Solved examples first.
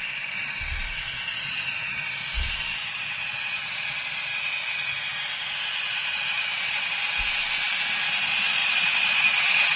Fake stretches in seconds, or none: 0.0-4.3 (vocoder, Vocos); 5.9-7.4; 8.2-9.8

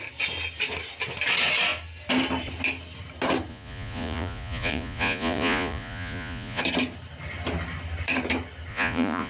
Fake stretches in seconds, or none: 3.5-6.6 (vocoder, Vocos); 8.7-9.3

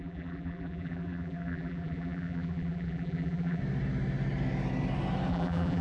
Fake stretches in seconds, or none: 0.0-3.6 (vocoder, BigVGAN v2); 5.3-5.8

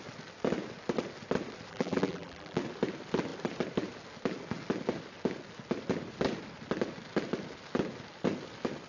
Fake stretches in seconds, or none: 1.7-2.6 (vocoder, BigVGAN v2)

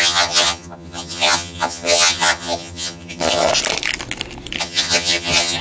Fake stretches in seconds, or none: 0.0-3.5 (vocoder, HiFi-GAN); 4.6-5.6

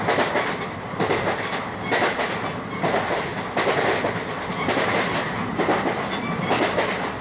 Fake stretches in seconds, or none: none

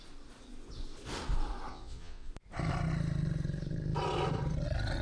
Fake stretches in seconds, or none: 1.7-2.3 (vocoder, Vocos)